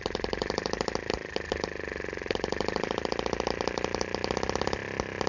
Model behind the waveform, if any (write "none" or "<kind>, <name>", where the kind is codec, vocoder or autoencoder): none